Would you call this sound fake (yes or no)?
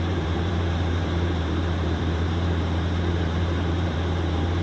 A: yes